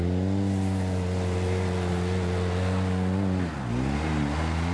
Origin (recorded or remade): recorded